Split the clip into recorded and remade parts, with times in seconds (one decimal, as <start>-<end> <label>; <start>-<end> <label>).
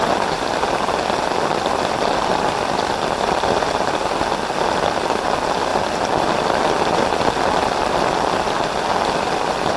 0.0-9.8 recorded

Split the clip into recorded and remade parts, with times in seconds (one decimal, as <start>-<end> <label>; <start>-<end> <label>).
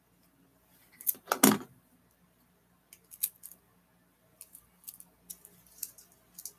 0.0-6.6 recorded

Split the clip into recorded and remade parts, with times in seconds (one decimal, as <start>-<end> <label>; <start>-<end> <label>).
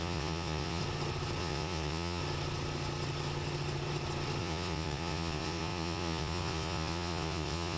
0.0-0.8 remade; 0.8-1.4 recorded; 1.4-2.2 remade; 2.2-4.4 recorded; 4.4-7.8 remade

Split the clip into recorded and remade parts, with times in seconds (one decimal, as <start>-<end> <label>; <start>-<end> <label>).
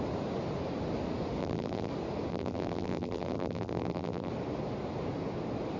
0.0-1.4 recorded; 1.4-1.9 remade; 1.9-2.3 recorded; 2.3-4.3 remade; 4.3-5.8 recorded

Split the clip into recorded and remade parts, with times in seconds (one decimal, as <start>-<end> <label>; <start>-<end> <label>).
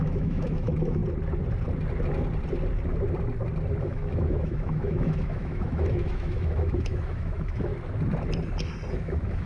0.0-1.0 remade; 1.0-3.8 recorded; 3.8-7.7 remade; 7.7-8.9 recorded; 8.9-9.5 remade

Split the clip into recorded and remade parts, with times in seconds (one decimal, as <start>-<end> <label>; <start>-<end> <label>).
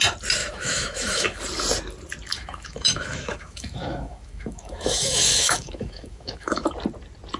0.0-0.4 recorded; 0.4-1.4 remade; 1.4-2.3 recorded; 2.3-6.7 remade; 6.7-7.4 recorded